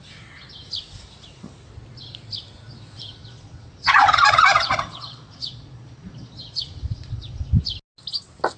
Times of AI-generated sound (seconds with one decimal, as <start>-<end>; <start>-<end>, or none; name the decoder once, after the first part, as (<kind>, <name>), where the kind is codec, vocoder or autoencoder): 3.2-7.5 (vocoder, Vocos)